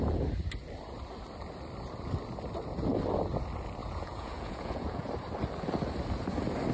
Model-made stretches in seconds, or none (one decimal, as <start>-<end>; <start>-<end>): 3.8-5.1